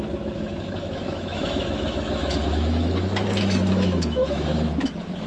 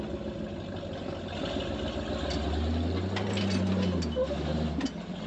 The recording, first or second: second